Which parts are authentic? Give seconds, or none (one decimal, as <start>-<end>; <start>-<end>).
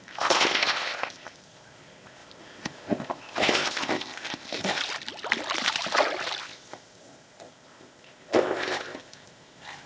4.8-6.4